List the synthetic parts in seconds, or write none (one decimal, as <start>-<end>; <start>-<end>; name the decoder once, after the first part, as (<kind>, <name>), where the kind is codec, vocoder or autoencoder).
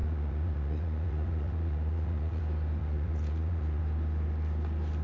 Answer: 0.0-2.4 (vocoder, Vocos); 2.8-3.8